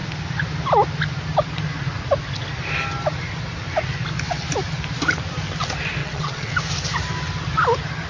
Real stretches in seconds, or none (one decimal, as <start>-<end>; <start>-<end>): 0.0-6.0; 6.5-8.1